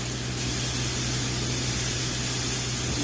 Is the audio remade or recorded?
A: recorded